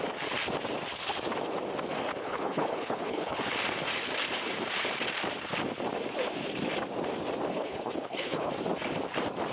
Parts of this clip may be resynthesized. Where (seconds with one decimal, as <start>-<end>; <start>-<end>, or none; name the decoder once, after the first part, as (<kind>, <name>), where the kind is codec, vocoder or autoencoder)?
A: 2.2-3.4 (codec, HILCodec); 7.5-8.5